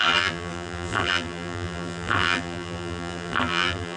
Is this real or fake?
fake